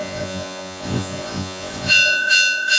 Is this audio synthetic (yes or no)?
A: yes